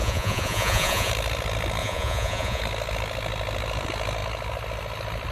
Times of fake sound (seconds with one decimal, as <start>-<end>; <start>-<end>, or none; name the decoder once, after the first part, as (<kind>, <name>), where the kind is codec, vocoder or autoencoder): 0.0-1.1 (vocoder, Vocos); 1.8-2.6